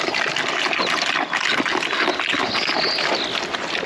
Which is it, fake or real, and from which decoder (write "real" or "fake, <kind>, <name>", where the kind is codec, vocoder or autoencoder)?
real